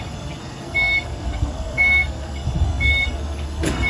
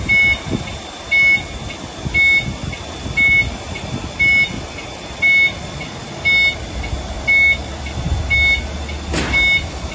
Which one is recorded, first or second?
second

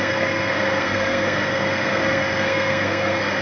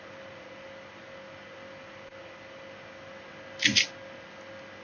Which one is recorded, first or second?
second